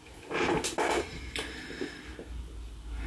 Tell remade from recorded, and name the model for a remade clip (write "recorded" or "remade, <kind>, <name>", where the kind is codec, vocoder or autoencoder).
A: recorded